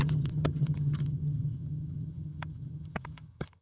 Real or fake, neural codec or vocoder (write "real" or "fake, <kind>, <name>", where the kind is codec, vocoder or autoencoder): fake, vocoder, HiFi-GAN